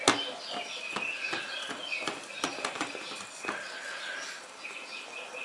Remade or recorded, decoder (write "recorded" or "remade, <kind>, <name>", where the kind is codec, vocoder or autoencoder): recorded